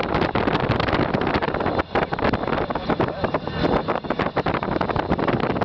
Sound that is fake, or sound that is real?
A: real